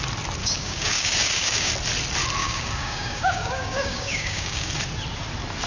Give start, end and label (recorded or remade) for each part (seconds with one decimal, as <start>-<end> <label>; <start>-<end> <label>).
0.0-0.4 recorded; 0.4-1.7 remade; 1.7-2.4 recorded; 2.4-4.7 remade; 4.7-5.7 recorded